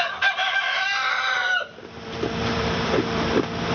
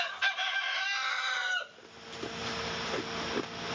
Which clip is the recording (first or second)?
second